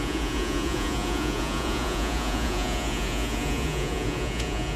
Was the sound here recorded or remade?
remade